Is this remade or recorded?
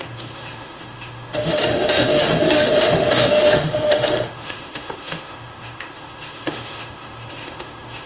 remade